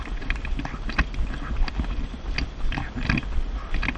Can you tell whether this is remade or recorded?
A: recorded